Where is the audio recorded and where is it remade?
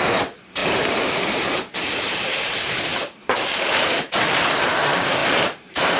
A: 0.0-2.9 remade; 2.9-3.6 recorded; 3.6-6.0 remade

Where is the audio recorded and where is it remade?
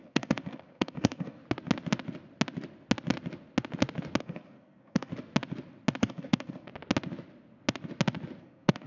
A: 0.0-1.4 remade; 1.4-4.2 recorded; 4.2-5.1 remade; 5.1-6.0 recorded; 6.0-6.7 remade; 6.7-8.4 recorded; 8.4-8.9 remade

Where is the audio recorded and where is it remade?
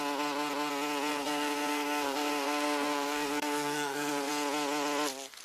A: 0.0-1.1 recorded; 1.1-4.3 remade; 4.3-5.4 recorded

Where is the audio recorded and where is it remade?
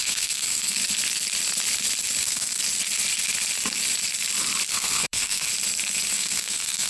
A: 0.0-0.8 remade; 0.8-2.2 recorded; 2.2-2.6 remade; 2.6-4.7 recorded; 4.7-5.5 remade; 5.5-6.1 recorded; 6.1-6.9 remade